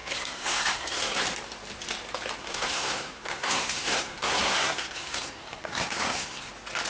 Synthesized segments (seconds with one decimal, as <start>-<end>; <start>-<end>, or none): 0.0-1.2; 2.4-6.5

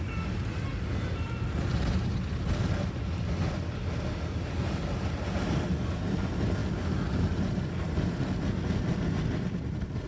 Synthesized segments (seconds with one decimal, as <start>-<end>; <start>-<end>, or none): none